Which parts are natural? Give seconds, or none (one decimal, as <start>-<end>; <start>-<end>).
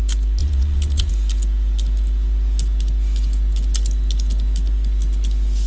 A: 0.0-0.4; 1.1-5.7